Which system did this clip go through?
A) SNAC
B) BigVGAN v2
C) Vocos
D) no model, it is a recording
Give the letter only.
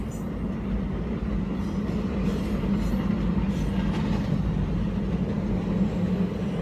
D